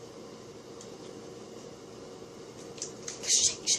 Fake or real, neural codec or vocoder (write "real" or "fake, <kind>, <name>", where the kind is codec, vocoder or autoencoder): fake, vocoder, BigVGAN v2